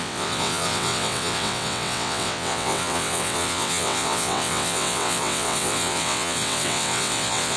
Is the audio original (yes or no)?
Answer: no